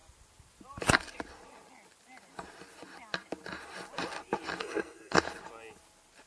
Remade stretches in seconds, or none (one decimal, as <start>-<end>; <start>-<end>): 4.6-5.2